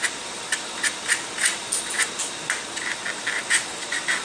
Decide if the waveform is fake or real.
real